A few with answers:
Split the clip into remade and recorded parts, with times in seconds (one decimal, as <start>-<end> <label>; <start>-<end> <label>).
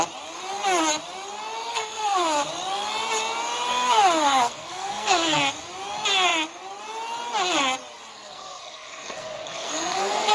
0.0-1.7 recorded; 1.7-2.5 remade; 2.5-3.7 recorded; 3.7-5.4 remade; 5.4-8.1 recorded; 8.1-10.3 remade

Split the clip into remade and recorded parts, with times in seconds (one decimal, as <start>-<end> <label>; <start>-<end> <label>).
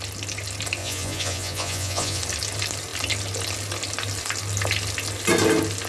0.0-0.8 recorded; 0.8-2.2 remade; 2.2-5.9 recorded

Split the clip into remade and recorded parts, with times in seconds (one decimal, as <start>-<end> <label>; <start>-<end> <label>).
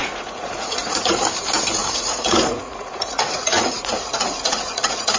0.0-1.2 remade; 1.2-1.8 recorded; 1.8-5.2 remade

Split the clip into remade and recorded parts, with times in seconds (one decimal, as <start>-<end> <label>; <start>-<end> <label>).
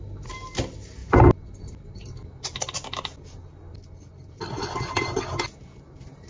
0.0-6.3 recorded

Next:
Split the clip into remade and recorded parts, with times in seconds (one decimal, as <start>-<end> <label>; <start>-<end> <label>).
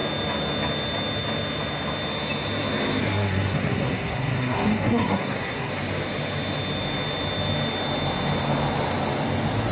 0.0-3.0 recorded; 3.0-5.7 remade; 5.7-9.7 recorded